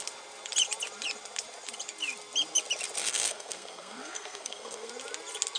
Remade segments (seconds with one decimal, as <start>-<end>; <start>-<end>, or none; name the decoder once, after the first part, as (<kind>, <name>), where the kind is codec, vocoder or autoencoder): 3.0-4.9 (codec, SNAC)